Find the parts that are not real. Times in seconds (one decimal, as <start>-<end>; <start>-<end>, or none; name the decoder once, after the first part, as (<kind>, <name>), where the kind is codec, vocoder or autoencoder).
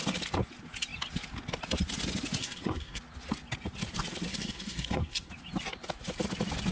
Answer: 2.4-3.0 (codec, SNAC); 4.3-5.3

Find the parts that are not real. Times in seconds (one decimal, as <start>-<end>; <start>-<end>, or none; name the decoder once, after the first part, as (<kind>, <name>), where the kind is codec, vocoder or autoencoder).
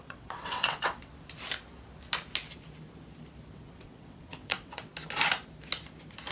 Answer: 0.0-1.1 (vocoder, WaveNeXt); 3.5-4.9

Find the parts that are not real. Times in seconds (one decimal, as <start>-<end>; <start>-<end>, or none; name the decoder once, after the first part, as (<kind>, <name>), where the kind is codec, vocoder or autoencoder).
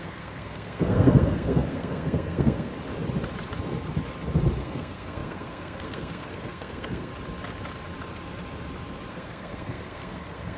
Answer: 0.0-2.7 (codec, SNAC); 4.6-7.1; 9.1-10.6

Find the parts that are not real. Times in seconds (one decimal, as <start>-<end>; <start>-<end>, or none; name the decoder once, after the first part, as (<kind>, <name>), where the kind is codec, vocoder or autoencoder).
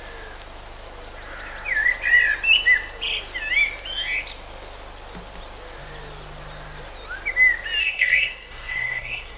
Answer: 7.8-9.4 (codec, SNAC)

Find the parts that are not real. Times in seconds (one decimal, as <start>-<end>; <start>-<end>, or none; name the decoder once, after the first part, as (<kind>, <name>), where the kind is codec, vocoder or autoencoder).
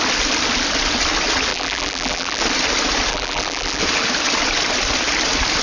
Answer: 1.5-2.4 (vocoder, BigVGAN v2); 3.1-3.8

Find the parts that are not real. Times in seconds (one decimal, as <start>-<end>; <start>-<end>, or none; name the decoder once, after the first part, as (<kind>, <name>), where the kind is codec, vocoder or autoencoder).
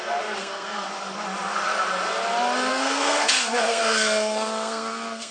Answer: 0.4-0.9 (codec, SNAC); 2.7-5.3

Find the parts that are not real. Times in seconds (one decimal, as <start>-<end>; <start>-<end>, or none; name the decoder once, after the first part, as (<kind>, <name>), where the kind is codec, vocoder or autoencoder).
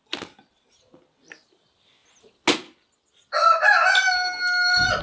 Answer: none